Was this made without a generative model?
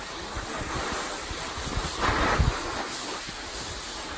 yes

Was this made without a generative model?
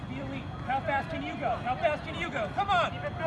yes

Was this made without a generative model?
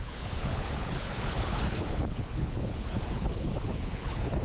no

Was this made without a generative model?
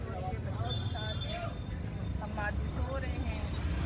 yes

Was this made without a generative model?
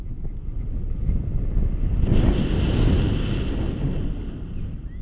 yes